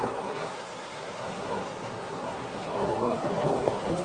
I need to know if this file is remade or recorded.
remade